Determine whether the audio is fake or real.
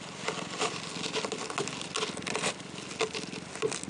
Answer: real